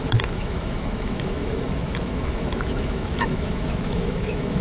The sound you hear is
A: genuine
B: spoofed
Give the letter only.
B